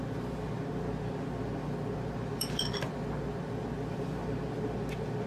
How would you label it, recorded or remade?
recorded